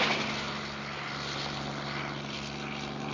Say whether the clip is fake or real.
real